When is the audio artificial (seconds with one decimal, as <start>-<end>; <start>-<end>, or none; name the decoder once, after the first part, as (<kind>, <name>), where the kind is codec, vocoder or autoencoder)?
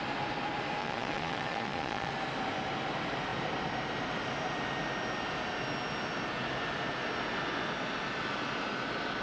0.8-2.1 (vocoder, Vocos)